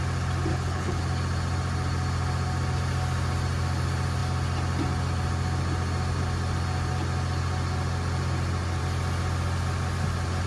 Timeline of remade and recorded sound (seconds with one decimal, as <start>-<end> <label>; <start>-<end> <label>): 0.0-0.5 recorded; 0.5-1.0 remade; 1.0-10.5 recorded